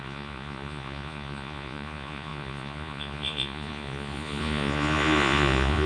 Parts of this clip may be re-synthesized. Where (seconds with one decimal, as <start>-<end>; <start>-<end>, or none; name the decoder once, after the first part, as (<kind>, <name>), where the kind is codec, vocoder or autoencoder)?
0.0-5.9 (vocoder, Vocos)